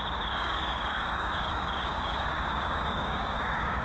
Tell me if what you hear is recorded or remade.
remade